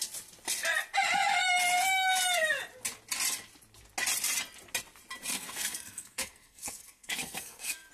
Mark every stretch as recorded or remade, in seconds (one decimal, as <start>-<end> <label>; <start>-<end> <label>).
0.0-5.3 recorded; 5.3-7.9 remade